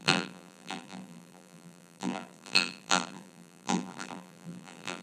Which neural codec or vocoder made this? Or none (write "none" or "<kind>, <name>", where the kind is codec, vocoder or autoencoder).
vocoder, BigVGAN v2